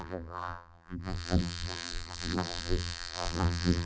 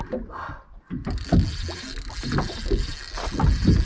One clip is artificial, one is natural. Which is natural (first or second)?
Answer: second